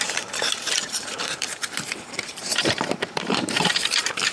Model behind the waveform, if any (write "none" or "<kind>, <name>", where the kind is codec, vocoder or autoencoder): vocoder, BigVGAN v2